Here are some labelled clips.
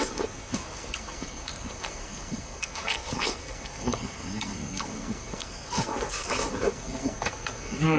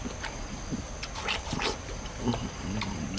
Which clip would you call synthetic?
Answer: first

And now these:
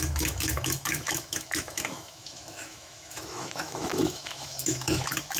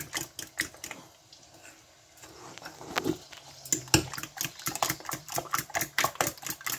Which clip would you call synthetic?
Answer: first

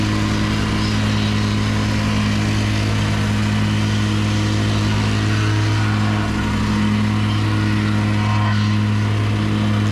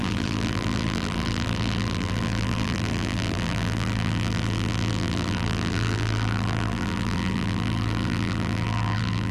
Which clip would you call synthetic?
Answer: second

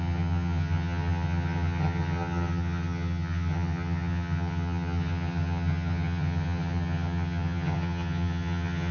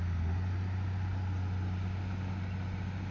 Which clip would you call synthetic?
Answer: first